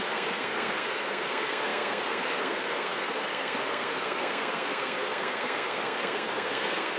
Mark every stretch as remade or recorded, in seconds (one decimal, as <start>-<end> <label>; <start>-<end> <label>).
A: 0.0-7.0 remade